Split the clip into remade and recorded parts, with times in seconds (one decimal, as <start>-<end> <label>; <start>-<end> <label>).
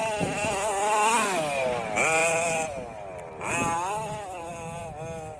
0.0-5.4 recorded